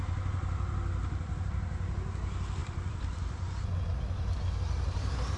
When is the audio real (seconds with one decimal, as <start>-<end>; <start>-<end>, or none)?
0.0-0.4; 1.3-2.6; 4.0-5.4